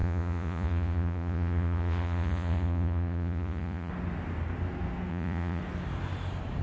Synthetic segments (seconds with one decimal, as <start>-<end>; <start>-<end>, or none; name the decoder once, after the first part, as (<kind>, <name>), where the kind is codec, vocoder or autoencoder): 0.0-3.9 (vocoder, Vocos); 5.1-5.6